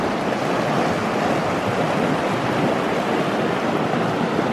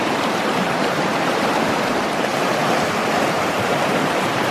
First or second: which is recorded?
first